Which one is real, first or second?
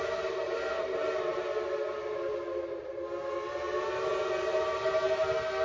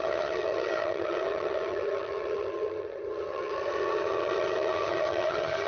first